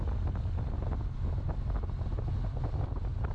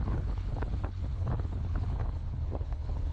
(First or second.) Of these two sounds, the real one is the first